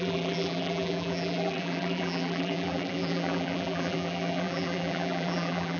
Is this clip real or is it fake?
fake